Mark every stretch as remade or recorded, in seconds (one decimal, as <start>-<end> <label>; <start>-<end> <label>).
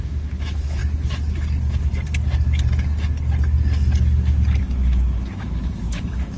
0.0-0.8 remade; 0.8-4.6 recorded; 4.6-6.4 remade